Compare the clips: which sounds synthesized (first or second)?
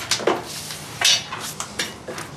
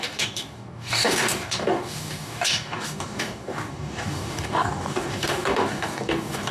second